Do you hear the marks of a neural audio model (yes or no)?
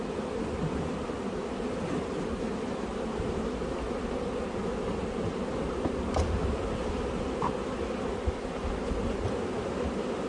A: no